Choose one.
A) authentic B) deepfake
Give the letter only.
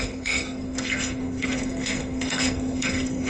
B